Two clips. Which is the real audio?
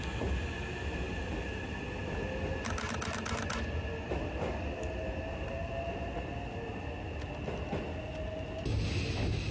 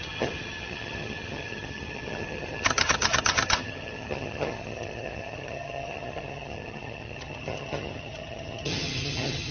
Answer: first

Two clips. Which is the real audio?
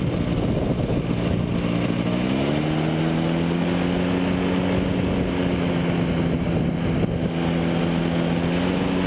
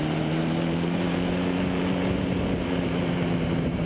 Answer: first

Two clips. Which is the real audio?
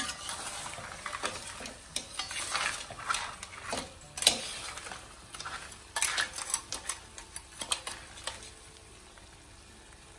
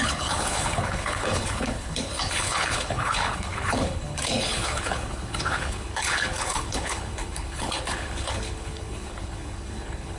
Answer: first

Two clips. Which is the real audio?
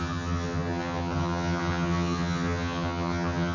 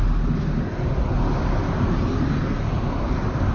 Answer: second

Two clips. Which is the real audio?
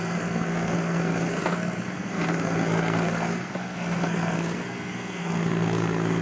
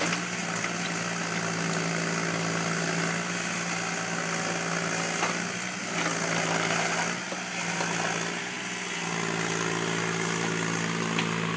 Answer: second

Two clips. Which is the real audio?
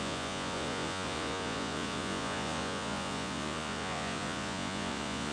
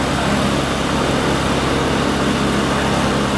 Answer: second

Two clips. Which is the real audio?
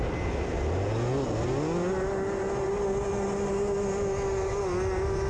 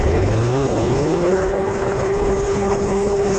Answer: first